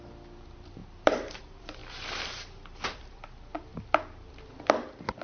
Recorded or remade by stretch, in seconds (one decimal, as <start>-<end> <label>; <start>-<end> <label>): 0.0-0.8 remade; 0.8-1.3 recorded; 1.3-5.2 remade